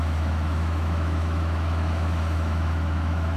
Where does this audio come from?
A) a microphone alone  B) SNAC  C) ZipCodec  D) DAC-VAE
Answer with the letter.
D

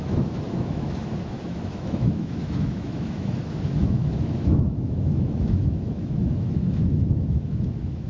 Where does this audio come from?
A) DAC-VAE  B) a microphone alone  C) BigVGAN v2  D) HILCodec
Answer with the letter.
A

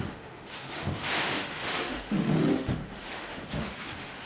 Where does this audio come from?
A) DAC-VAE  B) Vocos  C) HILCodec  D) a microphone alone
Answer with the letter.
A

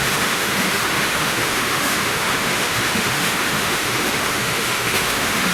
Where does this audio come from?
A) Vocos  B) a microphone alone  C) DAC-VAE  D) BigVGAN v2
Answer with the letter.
C